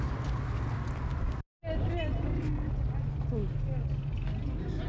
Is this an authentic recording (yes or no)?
yes